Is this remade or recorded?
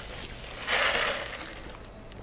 recorded